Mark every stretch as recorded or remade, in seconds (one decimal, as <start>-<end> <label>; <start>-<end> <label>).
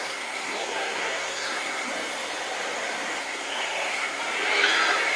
0.0-1.9 remade; 1.9-3.2 recorded; 3.2-4.2 remade; 4.2-5.2 recorded